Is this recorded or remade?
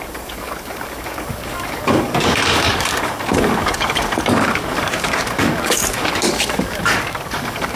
remade